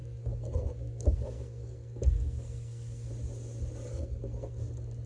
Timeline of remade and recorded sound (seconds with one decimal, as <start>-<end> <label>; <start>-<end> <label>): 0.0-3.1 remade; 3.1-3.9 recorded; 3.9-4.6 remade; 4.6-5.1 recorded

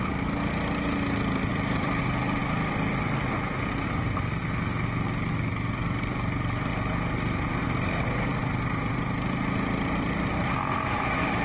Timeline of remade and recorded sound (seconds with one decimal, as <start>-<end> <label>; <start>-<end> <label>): 0.0-1.5 recorded; 1.5-2.0 remade; 2.0-6.7 recorded; 6.7-8.9 remade; 8.9-11.4 recorded

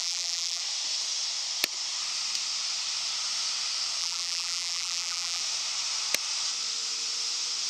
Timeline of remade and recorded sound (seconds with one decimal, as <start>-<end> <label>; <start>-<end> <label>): 0.0-0.6 remade; 0.6-4.0 recorded; 4.0-5.4 remade; 5.4-7.7 recorded

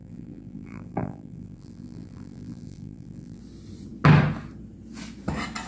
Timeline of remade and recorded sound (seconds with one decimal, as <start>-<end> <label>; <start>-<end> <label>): 0.0-3.4 remade; 3.4-5.7 recorded

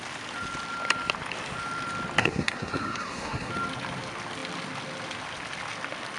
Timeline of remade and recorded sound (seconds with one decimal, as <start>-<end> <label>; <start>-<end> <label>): 0.0-2.2 recorded; 2.2-3.5 remade; 3.5-6.2 recorded

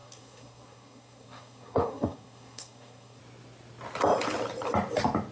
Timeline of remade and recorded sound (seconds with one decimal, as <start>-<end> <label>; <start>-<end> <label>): 0.0-3.2 remade; 3.2-5.3 recorded